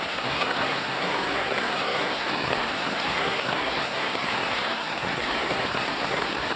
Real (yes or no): no